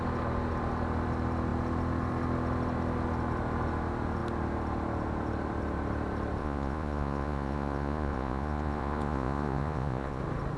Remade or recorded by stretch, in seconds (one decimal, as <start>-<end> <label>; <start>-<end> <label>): 0.0-6.4 recorded; 6.4-10.2 remade; 10.2-10.6 recorded